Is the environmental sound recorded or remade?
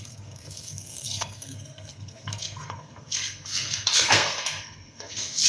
remade